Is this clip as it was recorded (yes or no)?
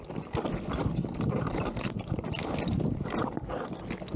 yes